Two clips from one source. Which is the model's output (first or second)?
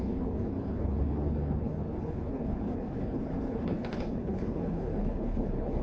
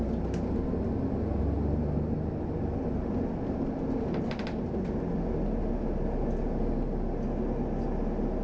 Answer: first